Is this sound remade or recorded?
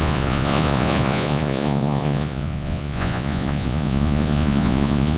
remade